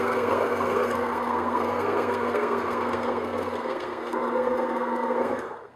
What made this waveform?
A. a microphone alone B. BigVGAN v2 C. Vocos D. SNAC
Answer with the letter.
D